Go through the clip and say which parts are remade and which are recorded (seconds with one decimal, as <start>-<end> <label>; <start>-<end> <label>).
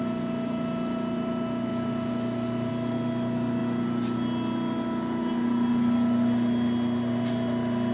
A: 0.0-7.9 recorded